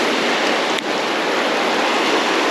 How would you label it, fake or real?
real